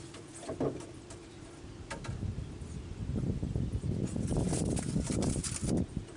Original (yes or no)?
yes